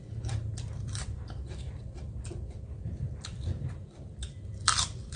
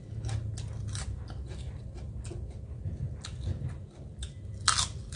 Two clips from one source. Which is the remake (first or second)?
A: first